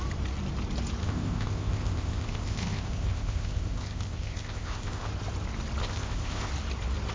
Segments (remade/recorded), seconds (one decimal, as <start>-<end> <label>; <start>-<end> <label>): 0.0-1.0 recorded; 1.0-5.1 remade; 5.1-5.8 recorded; 5.8-6.5 remade; 6.5-7.1 recorded